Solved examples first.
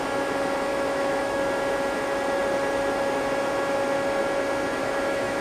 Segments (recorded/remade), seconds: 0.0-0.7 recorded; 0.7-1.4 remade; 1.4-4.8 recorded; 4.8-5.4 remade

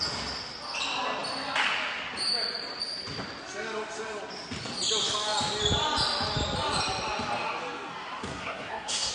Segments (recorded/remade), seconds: 0.0-8.2 recorded; 8.2-9.1 remade

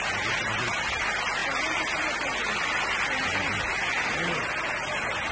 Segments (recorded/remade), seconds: 0.0-5.3 recorded